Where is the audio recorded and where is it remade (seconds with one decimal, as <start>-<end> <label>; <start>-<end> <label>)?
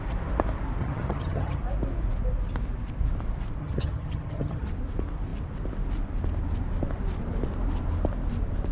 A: 0.0-0.8 recorded; 0.8-1.6 remade; 1.6-3.6 recorded; 3.6-4.7 remade; 4.7-8.7 recorded